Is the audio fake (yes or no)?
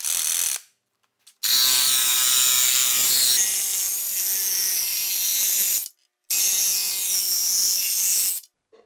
no